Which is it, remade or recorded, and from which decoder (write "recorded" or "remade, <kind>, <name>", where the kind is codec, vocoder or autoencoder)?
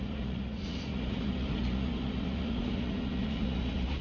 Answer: remade, vocoder, Vocos